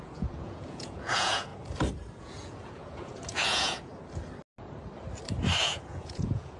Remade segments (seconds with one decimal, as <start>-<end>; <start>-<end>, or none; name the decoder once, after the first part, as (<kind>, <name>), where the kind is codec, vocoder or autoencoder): 0.0-1.5 (vocoder, Vocos); 2.2-3.9; 5.6-6.6